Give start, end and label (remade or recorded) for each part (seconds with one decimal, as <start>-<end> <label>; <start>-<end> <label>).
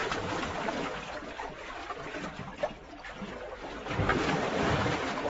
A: 0.0-0.8 remade; 0.8-1.8 recorded; 1.8-2.9 remade; 2.9-4.1 recorded; 4.1-5.3 remade